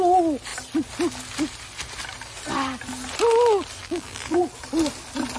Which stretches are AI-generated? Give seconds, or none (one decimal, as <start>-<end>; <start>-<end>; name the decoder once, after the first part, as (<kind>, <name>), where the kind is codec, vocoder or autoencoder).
3.8-4.4 (vocoder, BigVGAN v2)